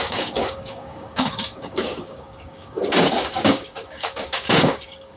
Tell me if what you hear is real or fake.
fake